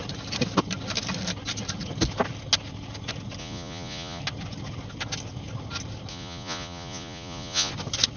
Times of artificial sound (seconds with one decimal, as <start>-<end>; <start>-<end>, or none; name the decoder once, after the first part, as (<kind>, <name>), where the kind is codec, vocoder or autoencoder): 3.4-4.2 (vocoder, Vocos); 6.1-7.7